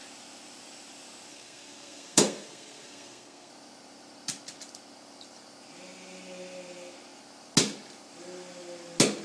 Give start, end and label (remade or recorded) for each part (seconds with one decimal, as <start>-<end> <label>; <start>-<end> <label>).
0.0-1.3 recorded; 1.3-3.5 remade; 3.5-9.2 recorded